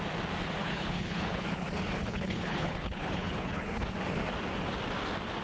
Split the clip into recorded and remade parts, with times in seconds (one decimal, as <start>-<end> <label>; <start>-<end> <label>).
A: 0.0-0.6 recorded; 0.6-3.8 remade; 3.8-5.4 recorded